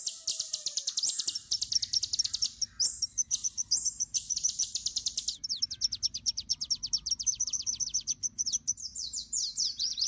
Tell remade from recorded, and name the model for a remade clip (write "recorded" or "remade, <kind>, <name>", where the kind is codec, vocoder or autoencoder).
remade, vocoder, BigVGAN v2